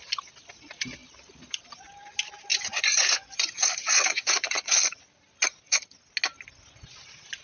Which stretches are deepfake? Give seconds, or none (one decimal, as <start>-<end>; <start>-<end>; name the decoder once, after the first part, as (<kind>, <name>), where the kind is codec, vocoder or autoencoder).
2.5-4.8 (vocoder, Vocos)